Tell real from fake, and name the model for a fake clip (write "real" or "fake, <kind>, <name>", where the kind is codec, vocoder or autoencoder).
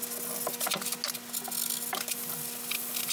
real